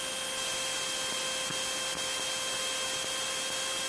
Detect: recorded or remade recorded